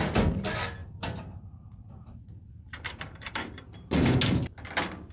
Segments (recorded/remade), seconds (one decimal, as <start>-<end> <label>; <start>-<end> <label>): 0.0-0.8 recorded; 0.8-3.9 remade; 3.9-5.1 recorded